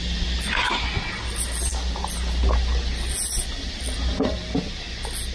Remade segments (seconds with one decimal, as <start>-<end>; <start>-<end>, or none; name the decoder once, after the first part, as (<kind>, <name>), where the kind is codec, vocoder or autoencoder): none